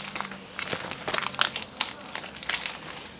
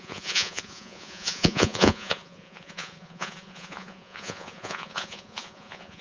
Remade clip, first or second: second